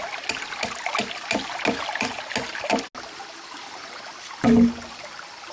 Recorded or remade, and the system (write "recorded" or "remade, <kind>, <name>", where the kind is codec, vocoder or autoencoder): recorded